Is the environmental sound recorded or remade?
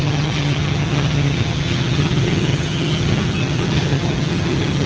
remade